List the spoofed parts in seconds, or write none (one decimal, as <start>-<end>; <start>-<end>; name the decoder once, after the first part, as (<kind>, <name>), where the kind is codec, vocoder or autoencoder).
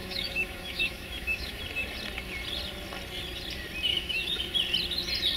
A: 0.0-1.6 (autoencoder, DAC-VAE); 3.9-4.4